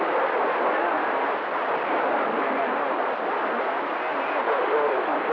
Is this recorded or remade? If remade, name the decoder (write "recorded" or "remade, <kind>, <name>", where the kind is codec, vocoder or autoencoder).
recorded